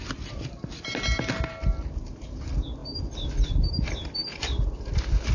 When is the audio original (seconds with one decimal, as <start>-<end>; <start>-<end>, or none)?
0.0-5.3